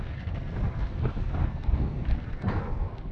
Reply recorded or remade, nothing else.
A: remade